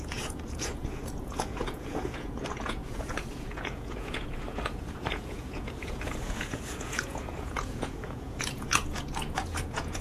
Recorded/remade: remade